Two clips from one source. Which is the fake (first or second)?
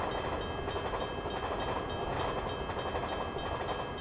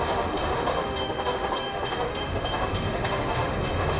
second